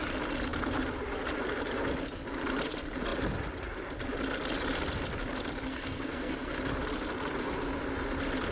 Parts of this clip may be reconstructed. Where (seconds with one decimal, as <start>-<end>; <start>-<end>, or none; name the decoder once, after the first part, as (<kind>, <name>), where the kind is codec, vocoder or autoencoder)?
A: 5.7-6.5 (codec, SNAC)